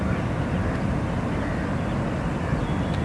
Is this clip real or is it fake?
real